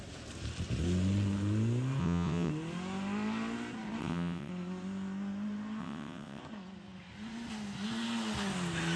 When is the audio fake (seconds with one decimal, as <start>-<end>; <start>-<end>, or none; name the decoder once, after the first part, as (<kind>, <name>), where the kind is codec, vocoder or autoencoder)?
2.0-2.5 (vocoder, WaveNeXt); 4.0-4.5; 5.8-6.4